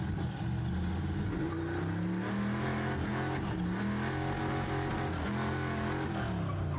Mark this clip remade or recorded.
recorded